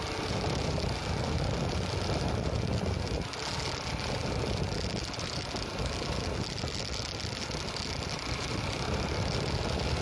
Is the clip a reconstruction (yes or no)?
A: no